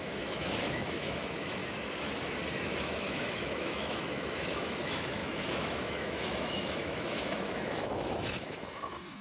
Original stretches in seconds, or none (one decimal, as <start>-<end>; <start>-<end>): 1.6-2.6